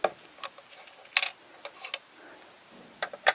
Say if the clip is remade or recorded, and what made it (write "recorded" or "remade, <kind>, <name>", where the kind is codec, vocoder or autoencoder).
recorded